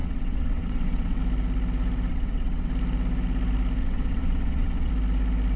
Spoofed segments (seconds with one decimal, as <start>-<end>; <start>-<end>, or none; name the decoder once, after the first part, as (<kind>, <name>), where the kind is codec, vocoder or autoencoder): 0.0-1.2 (vocoder, WaveNeXt); 2.1-2.7; 3.8-4.9